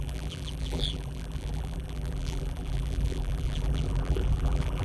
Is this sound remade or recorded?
remade